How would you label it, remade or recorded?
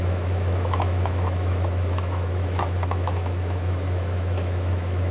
remade